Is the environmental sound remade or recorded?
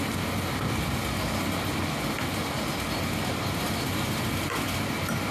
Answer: recorded